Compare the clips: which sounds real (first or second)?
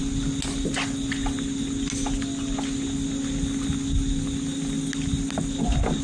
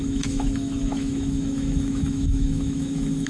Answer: first